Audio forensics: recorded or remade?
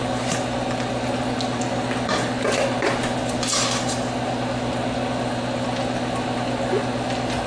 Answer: recorded